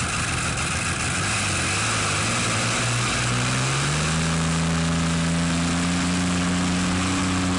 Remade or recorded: recorded